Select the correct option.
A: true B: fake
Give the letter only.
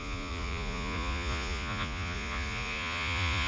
B